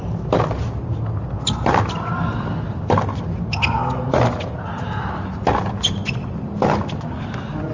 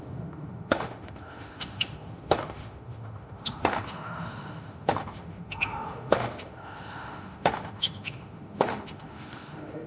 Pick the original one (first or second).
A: first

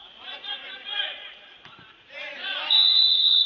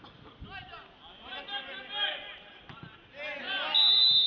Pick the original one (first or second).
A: second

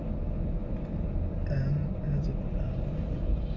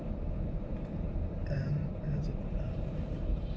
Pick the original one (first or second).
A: first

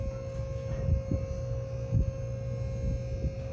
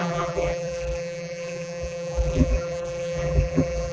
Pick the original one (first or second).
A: first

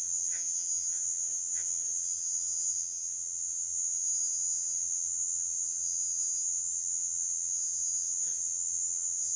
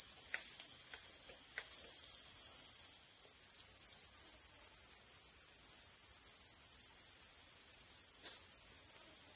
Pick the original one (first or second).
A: second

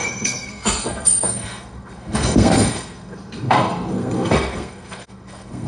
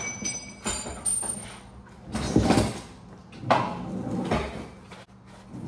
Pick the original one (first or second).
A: second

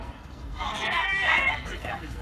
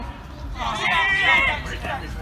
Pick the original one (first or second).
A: second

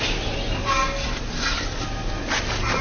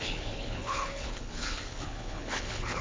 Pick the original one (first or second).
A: first